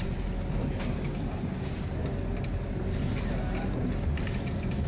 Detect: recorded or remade recorded